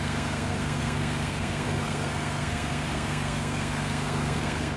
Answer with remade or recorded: remade